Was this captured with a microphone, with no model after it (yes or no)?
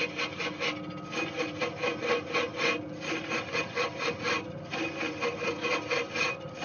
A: yes